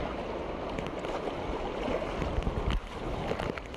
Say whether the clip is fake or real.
real